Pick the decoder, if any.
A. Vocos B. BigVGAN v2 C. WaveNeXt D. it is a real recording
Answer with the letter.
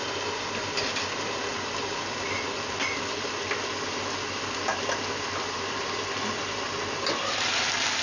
D